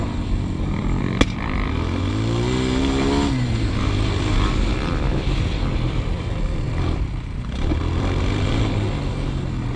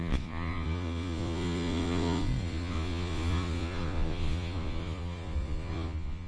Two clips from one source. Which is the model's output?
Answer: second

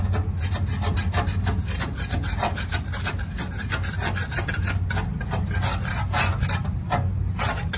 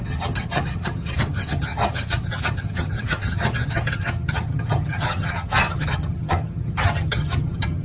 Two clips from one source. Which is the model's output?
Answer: second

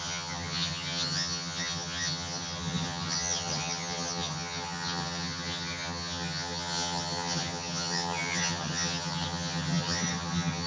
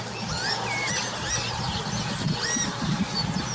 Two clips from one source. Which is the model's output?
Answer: first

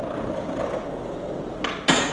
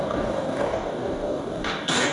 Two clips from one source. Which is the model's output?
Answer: second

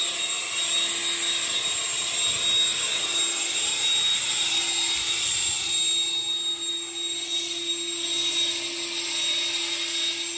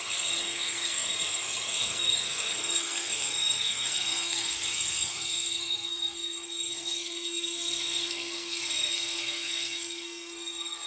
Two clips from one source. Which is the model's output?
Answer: second